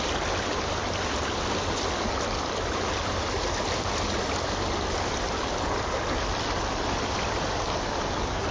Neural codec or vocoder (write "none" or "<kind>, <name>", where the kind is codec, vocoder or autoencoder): none